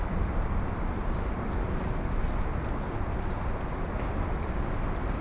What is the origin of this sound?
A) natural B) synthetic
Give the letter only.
A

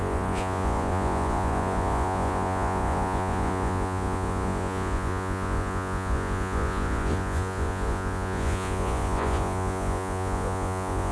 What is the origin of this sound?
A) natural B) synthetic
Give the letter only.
B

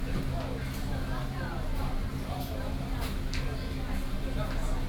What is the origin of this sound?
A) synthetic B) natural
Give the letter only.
B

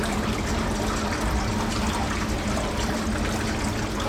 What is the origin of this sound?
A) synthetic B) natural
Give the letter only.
B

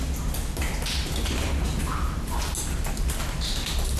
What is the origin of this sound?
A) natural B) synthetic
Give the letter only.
A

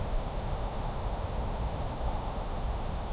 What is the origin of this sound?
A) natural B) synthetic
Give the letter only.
B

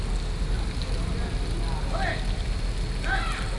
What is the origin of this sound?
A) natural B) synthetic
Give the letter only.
A